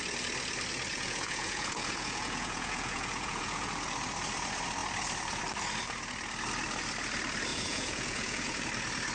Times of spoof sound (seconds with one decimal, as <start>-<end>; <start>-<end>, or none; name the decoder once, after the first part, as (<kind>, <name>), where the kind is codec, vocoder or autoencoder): 0.9-3.7 (vocoder, Vocos); 7.5-8.6